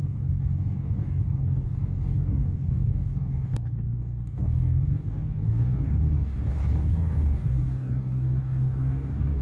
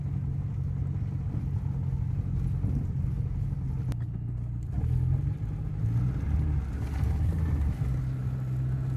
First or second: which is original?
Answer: second